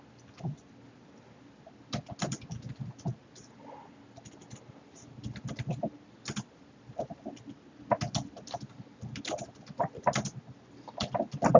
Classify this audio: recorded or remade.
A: recorded